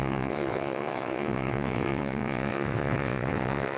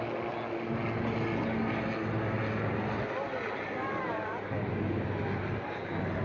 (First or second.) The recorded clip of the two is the second